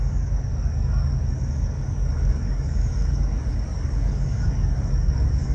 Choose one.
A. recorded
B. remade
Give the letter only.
B